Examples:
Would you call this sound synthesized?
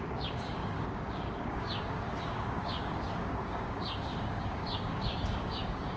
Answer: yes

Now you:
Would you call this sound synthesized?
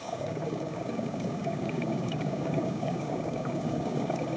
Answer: yes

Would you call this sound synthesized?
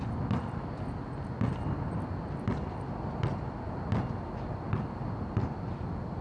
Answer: no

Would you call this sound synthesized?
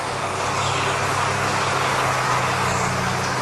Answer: yes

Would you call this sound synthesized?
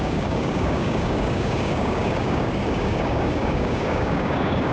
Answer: yes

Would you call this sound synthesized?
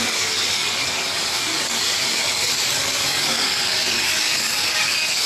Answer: yes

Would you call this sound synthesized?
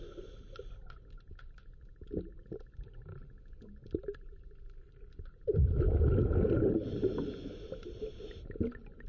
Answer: no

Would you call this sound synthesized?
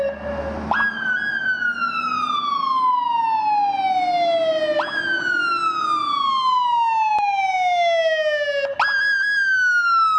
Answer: no